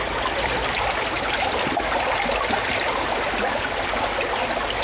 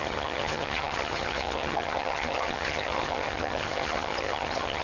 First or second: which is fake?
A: second